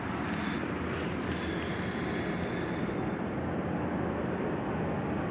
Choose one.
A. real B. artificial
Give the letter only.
A